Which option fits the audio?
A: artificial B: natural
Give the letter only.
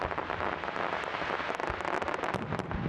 B